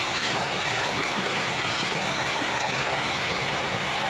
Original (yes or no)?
no